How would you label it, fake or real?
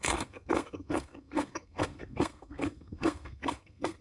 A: fake